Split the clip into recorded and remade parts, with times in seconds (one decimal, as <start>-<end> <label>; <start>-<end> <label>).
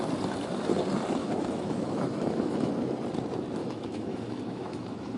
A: 0.0-1.2 recorded; 1.2-2.7 remade; 2.7-3.6 recorded; 3.6-5.2 remade